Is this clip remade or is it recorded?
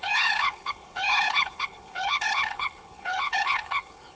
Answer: remade